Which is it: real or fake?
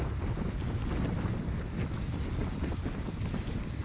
real